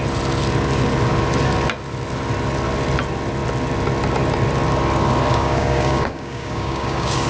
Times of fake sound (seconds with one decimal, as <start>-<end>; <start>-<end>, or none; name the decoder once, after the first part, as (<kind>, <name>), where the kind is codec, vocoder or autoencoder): 5.3-7.3 (codec, DAC)